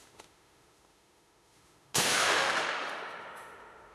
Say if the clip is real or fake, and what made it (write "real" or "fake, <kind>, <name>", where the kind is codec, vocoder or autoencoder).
fake, autoencoder, DAC-VAE